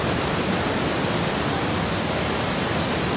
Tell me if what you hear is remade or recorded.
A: recorded